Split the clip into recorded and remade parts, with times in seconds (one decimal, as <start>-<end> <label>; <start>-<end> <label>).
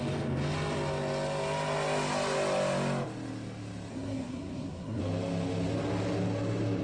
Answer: 0.0-3.9 recorded; 3.9-5.0 remade; 5.0-6.8 recorded